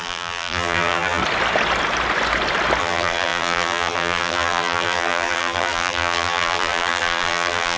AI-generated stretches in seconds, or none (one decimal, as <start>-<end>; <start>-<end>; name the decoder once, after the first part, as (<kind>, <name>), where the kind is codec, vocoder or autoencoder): 0.0-1.2 (vocoder, BigVGAN v2); 2.8-7.8